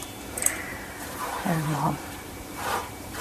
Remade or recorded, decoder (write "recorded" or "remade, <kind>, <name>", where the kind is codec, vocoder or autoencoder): remade, vocoder, BigVGAN v2